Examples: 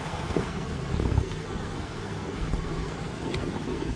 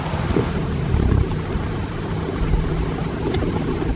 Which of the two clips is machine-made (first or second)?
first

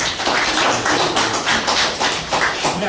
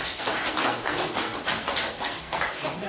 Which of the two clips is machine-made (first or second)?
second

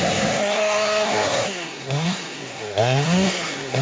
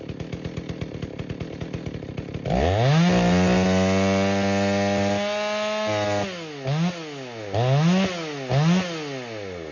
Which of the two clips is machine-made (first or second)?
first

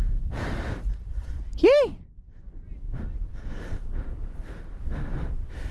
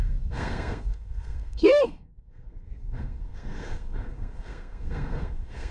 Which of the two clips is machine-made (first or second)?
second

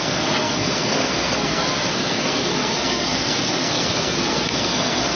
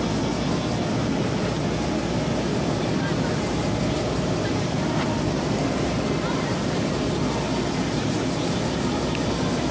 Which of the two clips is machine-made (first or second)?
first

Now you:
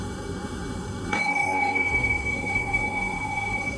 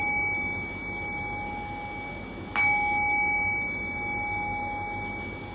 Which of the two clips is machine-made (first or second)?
first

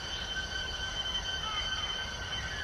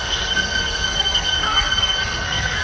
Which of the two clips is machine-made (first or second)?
second